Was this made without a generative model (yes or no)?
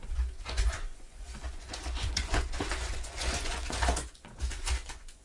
no